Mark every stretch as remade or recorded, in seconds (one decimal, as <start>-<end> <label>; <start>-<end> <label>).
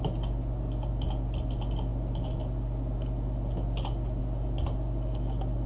0.0-5.7 recorded